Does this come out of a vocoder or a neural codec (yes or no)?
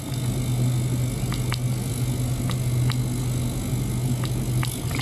no